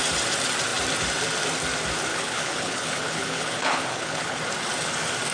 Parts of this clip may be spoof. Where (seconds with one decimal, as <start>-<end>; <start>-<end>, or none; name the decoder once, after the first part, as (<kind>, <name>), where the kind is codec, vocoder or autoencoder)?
2.1-4.4 (codec, HILCodec)

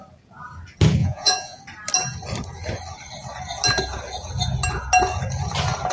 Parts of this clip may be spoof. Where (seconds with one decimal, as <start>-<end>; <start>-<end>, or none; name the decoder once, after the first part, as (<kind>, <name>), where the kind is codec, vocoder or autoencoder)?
1.0-1.6 (vocoder, Vocos)